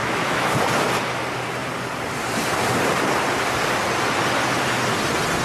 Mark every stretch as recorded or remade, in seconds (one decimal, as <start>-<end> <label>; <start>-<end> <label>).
0.0-0.5 remade; 0.5-5.4 recorded